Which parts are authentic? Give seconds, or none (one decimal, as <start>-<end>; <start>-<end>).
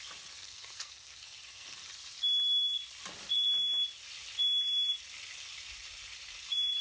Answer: 0.0-0.4; 1.9-6.8